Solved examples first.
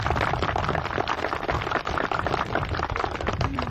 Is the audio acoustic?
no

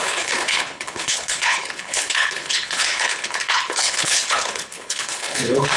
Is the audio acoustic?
no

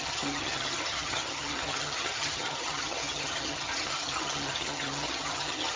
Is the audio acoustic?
no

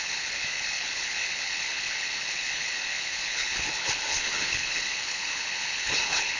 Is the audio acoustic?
no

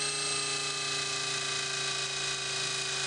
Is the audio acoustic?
yes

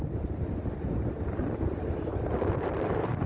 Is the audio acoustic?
yes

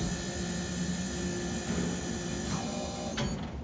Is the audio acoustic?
yes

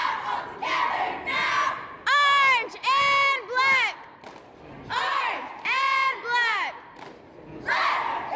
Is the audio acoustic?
yes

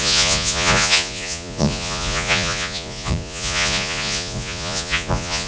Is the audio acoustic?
no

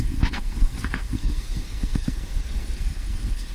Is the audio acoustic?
no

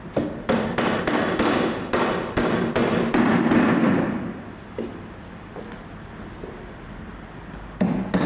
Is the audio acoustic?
yes